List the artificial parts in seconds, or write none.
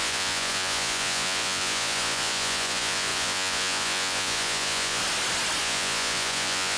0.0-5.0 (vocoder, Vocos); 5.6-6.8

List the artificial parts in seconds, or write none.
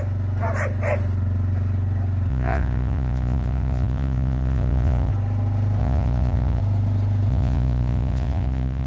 2.3-5.1 (vocoder, Vocos); 5.8-6.6; 7.3-8.9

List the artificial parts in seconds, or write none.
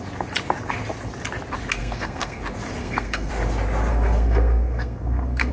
1.8-2.4 (codec, SNAC); 2.8-3.3; 3.9-5.5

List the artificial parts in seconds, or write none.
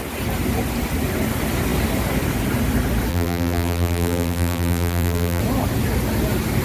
3.1-5.4 (vocoder, BigVGAN v2)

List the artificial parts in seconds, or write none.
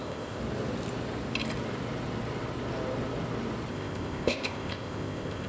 0.0-0.4 (codec, ZipCodec); 3.7-5.5